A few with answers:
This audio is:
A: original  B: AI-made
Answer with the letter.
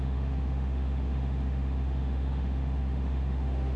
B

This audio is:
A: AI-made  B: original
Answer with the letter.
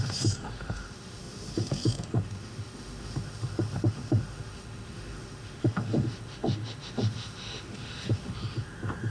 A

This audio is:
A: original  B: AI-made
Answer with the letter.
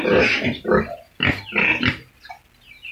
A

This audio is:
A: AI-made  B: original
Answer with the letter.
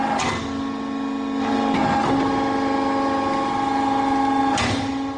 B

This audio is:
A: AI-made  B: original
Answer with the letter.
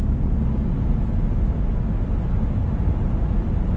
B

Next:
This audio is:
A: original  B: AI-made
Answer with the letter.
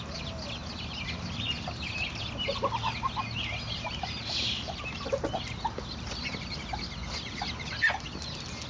A